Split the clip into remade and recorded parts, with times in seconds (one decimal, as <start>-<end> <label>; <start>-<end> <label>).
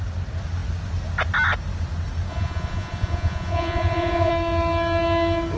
0.0-2.3 recorded; 2.3-4.3 remade; 4.3-5.6 recorded